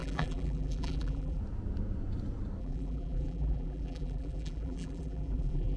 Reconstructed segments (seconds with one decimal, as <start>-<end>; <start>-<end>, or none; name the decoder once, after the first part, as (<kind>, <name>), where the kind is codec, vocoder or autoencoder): 0.0-1.4 (vocoder, BigVGAN v2); 2.6-5.8